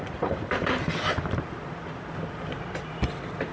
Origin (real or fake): fake